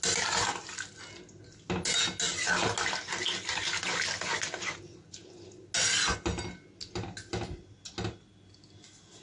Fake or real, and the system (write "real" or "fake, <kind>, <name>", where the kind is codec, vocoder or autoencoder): real